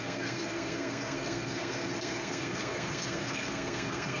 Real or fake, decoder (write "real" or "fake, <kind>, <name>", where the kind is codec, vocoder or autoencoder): fake, codec, SNAC